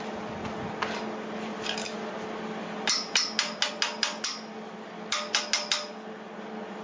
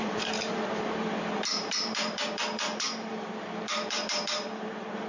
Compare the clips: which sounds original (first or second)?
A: first